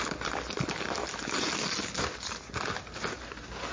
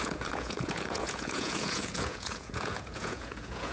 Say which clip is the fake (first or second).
second